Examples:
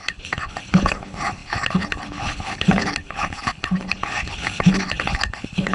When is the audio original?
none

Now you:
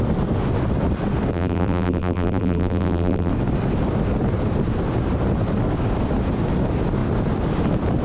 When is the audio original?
0.0-1.3; 3.3-8.0